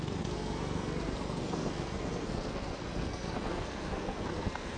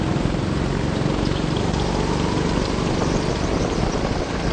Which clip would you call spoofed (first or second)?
first